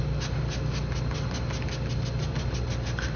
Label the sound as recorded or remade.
recorded